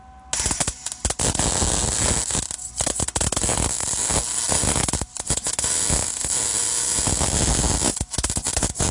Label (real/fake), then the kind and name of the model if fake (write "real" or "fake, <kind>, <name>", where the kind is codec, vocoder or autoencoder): real